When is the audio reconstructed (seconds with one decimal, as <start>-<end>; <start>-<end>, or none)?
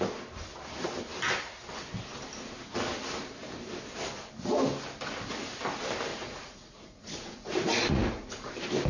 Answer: 6.1-8.5